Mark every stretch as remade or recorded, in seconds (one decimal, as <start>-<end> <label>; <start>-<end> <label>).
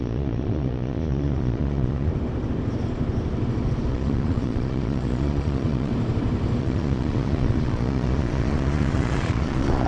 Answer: 0.0-2.1 remade; 2.1-3.9 recorded; 3.9-5.9 remade; 5.9-6.6 recorded; 6.6-9.9 remade